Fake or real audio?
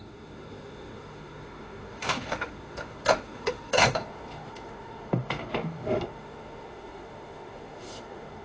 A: fake